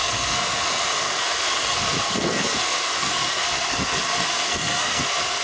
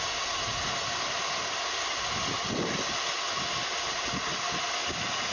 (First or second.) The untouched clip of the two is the second